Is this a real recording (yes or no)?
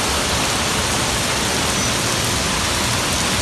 yes